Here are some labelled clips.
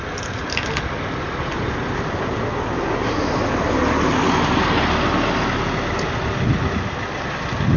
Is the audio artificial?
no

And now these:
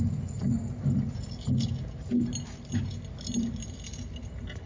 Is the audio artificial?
no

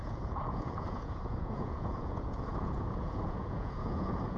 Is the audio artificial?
yes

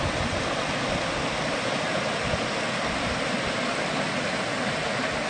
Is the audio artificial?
no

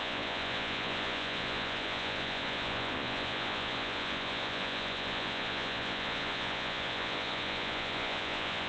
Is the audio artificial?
yes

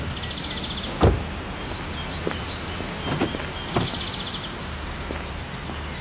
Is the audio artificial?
no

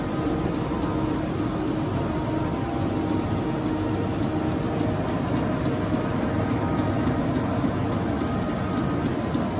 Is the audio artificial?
no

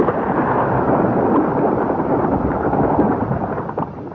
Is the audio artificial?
no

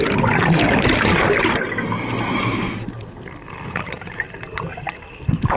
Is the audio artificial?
no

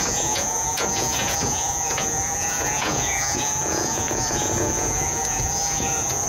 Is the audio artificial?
yes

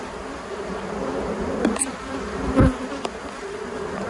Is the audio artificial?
no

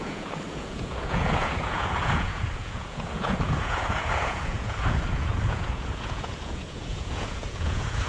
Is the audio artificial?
yes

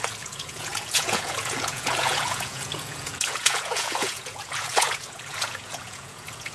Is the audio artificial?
yes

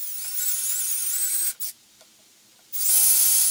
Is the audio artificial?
no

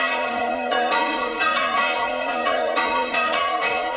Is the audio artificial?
yes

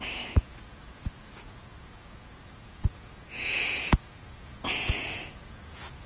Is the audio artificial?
yes